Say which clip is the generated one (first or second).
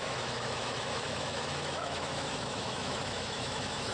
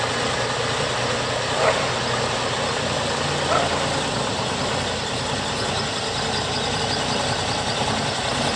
first